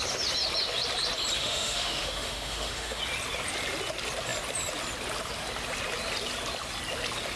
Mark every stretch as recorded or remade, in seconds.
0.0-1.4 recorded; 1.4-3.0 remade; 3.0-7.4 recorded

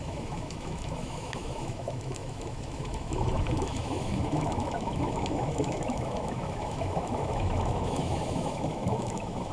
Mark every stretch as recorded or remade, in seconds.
0.0-9.5 remade

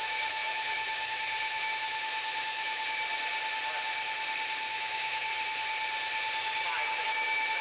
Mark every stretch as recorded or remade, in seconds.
0.0-3.0 remade; 3.0-4.7 recorded; 4.7-5.3 remade; 5.3-7.0 recorded; 7.0-7.6 remade

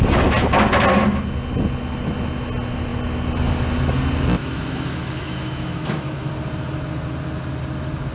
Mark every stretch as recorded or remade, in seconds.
0.0-4.4 recorded; 4.4-6.3 remade; 6.3-8.1 recorded